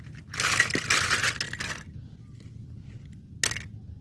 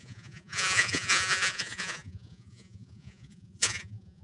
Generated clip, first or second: second